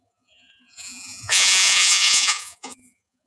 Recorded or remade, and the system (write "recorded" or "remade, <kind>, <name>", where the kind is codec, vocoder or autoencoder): remade, vocoder, Vocos